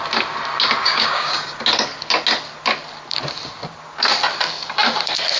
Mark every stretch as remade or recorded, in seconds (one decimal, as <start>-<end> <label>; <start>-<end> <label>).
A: 0.0-0.8 recorded; 0.8-1.6 remade; 1.6-5.4 recorded